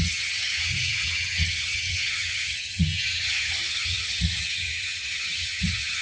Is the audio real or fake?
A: fake